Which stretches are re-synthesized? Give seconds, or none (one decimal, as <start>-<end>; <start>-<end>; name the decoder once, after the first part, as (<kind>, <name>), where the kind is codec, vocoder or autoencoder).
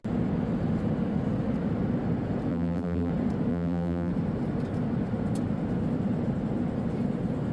2.5-3.1 (vocoder, BigVGAN v2); 3.5-4.1